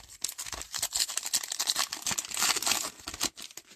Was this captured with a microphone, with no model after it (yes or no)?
yes